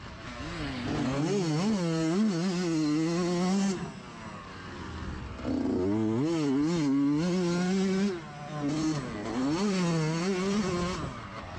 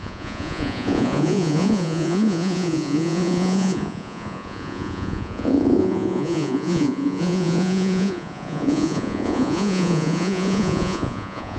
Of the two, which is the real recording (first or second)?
first